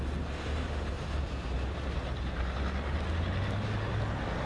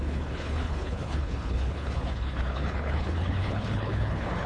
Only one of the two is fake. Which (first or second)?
second